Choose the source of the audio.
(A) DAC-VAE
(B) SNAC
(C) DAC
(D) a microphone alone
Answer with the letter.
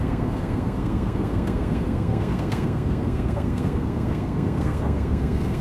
B